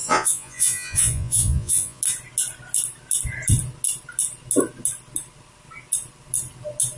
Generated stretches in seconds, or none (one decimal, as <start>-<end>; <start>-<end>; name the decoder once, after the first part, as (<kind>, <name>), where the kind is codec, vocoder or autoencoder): 0.0-2.0 (vocoder, Vocos)